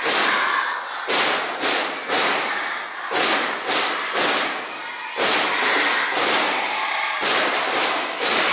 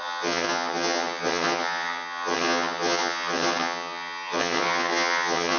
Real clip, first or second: first